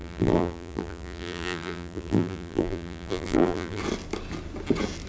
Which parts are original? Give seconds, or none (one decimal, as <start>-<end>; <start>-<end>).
3.8-5.1